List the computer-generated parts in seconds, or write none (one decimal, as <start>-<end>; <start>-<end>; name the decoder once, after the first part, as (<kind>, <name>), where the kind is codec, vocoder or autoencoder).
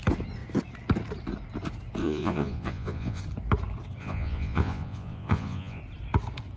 2.0-3.2 (vocoder, Vocos); 4.0-5.8